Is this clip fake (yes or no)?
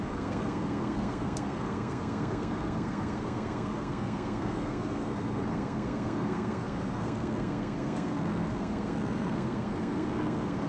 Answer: yes